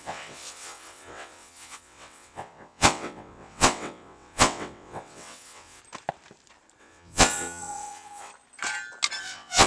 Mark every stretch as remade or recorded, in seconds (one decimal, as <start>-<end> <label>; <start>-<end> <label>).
0.0-5.8 remade; 5.8-6.8 recorded; 6.8-8.3 remade; 8.3-9.2 recorded; 9.2-9.7 remade